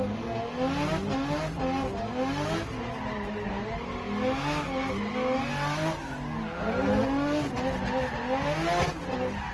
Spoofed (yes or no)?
no